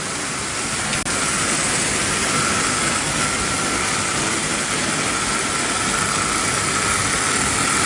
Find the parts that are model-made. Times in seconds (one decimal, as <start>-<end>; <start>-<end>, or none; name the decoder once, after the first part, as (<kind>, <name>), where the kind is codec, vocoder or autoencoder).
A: 0.0-0.9 (vocoder, BigVGAN v2); 3.8-4.5